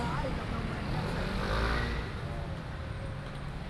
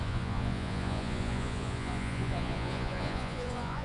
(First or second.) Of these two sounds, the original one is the first